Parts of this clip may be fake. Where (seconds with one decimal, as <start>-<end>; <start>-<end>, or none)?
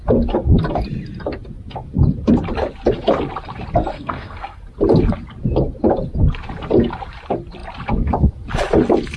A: 3.9-4.6